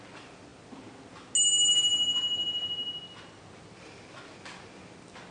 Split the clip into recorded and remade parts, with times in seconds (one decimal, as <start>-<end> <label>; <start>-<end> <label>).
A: 0.0-5.3 recorded